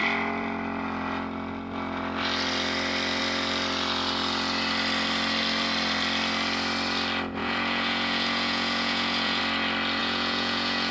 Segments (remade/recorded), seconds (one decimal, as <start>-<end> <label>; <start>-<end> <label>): 0.0-7.4 recorded; 7.4-9.4 remade; 9.4-10.0 recorded; 10.0-10.9 remade